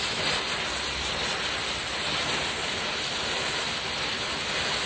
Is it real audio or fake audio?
real